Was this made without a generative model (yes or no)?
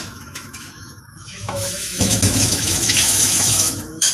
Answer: no